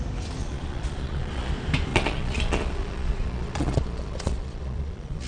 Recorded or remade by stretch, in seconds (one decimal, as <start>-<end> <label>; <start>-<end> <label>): 0.0-0.4 recorded; 0.4-1.5 remade; 1.5-1.9 recorded; 1.9-5.3 remade